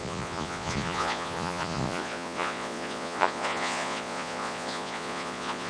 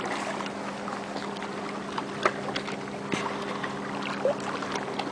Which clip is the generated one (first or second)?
first